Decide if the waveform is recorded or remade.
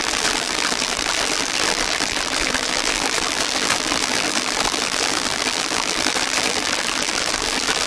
remade